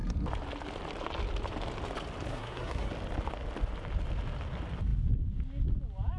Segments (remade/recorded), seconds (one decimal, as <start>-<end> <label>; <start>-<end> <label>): 0.0-2.3 recorded; 2.3-2.9 remade; 2.9-6.2 recorded